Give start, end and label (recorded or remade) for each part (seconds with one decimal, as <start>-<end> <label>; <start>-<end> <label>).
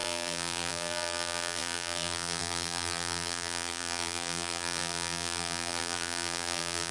0.0-6.9 remade